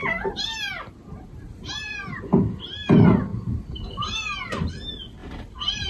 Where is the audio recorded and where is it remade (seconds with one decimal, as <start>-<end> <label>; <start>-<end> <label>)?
0.0-2.2 remade; 2.2-5.2 recorded; 5.2-5.9 remade